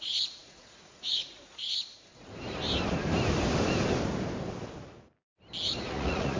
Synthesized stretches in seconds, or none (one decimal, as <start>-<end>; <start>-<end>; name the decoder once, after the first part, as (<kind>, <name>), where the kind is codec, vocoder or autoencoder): 0.0-1.9 (vocoder, Vocos); 5.7-6.4